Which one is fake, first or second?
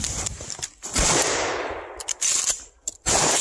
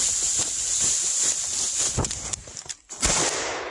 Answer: first